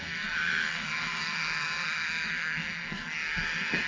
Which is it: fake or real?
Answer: fake